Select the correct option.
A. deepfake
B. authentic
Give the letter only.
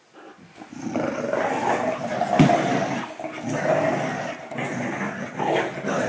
B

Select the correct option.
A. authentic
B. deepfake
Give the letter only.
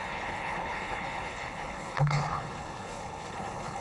B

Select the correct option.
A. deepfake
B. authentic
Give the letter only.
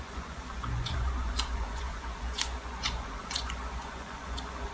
A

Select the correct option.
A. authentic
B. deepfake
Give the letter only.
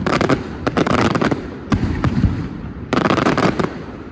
B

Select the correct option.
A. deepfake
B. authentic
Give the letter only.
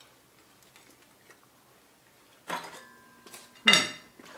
B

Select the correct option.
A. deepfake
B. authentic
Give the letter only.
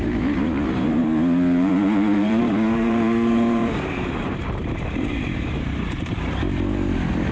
A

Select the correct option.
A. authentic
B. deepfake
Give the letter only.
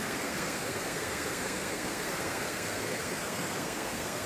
B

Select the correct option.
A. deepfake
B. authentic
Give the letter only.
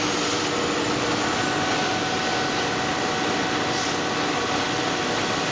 B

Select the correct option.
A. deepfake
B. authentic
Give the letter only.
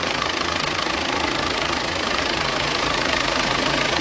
A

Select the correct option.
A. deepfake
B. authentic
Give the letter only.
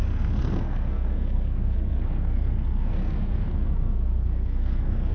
A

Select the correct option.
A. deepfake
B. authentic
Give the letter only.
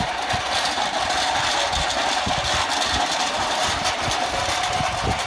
B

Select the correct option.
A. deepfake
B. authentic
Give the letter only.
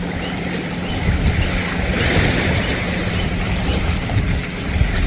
A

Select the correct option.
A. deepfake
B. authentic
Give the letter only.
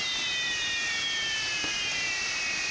B